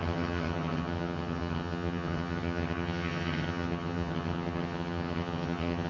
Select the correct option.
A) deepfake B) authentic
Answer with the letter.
A